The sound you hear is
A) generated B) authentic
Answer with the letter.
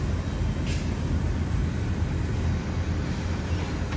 B